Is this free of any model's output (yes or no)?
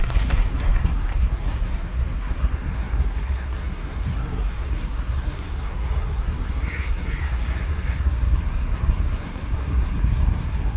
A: no